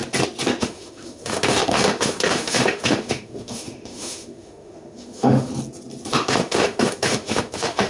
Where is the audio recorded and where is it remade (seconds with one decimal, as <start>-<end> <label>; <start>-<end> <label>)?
0.0-0.6 recorded; 0.6-5.5 remade; 5.5-6.1 recorded; 6.1-7.9 remade